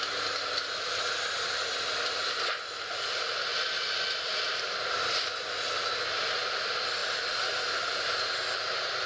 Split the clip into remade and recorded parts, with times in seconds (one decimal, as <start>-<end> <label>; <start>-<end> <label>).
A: 0.0-9.1 recorded